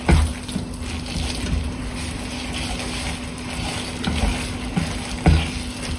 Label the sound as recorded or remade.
recorded